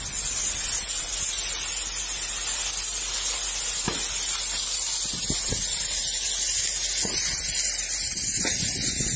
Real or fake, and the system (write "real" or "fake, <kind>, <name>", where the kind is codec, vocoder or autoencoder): real